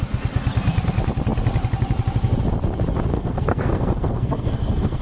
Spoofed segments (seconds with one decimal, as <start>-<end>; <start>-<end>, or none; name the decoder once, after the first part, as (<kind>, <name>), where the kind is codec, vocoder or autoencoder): 3.1-5.0 (codec, SNAC)